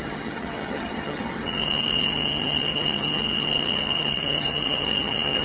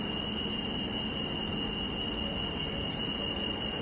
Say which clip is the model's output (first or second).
first